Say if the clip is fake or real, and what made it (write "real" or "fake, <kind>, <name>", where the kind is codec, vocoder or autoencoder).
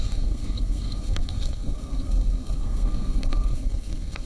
fake, codec, SNAC